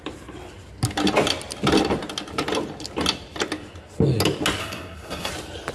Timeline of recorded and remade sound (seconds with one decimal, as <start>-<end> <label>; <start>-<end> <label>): 0.0-4.6 recorded; 4.6-5.3 remade; 5.3-5.7 recorded